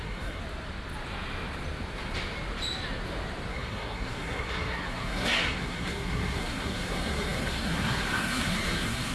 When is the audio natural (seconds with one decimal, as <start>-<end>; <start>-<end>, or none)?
0.4-3.5